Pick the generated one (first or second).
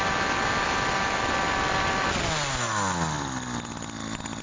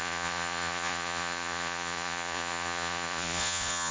second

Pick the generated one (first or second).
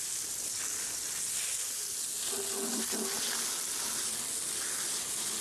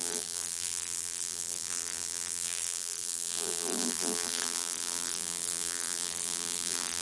second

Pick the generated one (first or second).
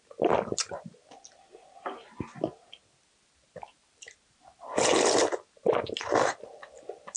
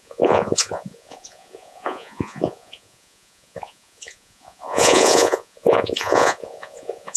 second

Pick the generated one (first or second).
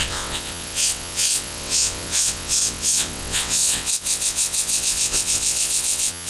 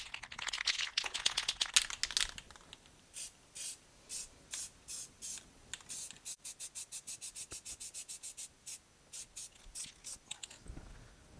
first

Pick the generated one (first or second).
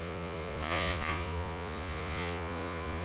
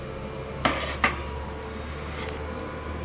first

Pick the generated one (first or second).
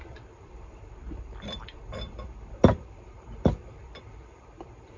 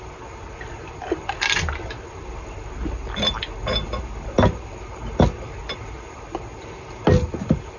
first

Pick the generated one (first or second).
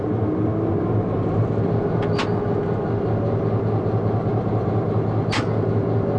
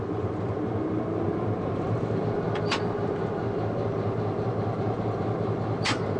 second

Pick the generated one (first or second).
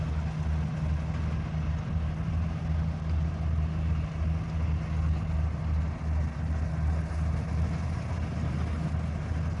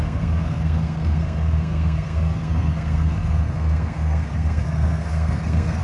second